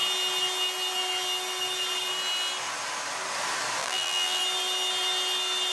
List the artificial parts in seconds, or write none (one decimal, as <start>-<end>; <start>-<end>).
3.8-4.4